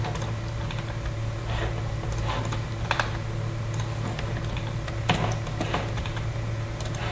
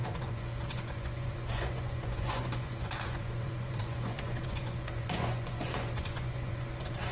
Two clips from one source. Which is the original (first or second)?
first